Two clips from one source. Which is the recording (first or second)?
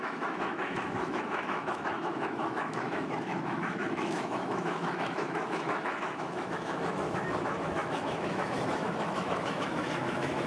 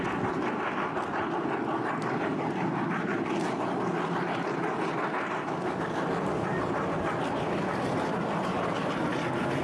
second